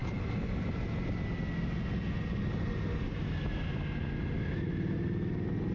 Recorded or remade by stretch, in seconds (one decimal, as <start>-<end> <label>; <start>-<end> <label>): 0.0-5.7 recorded